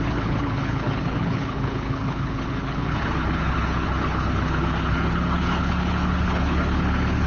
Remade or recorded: remade